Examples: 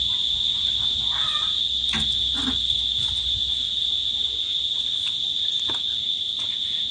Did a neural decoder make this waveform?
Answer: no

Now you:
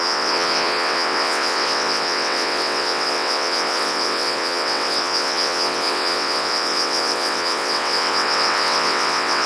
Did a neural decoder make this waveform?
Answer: yes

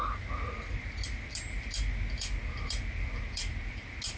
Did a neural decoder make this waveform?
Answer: no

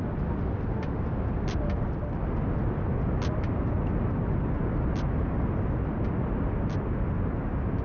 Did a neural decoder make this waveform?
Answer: no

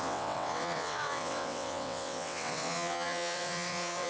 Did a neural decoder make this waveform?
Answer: yes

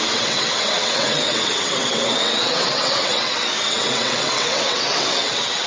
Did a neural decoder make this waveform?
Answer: yes